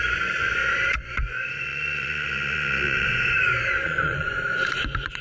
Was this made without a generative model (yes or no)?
no